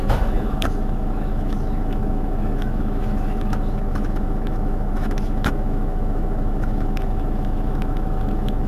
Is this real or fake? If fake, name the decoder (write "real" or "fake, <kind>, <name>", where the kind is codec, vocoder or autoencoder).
fake, autoencoder, DAC-VAE